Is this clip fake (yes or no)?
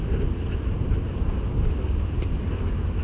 no